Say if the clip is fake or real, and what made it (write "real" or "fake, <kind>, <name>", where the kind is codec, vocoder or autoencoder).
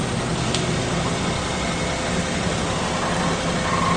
real